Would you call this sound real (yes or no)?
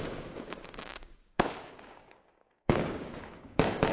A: no